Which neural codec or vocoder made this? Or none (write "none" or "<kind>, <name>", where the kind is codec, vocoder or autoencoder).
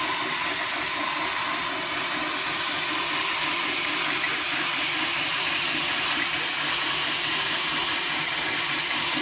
none